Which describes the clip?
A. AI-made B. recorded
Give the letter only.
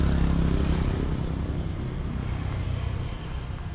B